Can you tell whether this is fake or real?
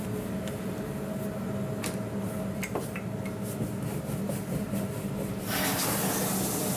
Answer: real